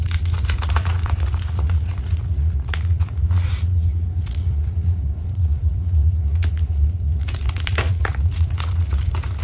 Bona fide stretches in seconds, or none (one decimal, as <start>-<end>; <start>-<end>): none